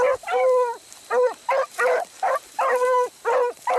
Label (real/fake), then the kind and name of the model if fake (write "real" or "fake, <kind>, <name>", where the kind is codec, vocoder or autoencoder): real